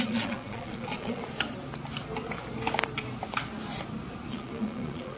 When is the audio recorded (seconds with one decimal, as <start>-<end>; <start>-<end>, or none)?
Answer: 1.2-4.3